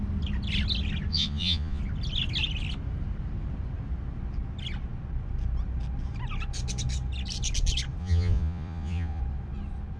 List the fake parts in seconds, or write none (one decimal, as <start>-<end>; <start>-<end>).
1.1-1.8; 8.0-9.2